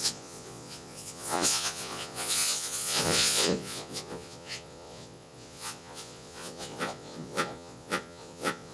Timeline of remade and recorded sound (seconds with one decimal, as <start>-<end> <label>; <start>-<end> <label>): 0.0-8.7 remade